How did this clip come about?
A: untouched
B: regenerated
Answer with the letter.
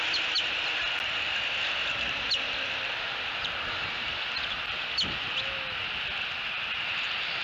A